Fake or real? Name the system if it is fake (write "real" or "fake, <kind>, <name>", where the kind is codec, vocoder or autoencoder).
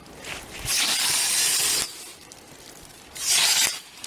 real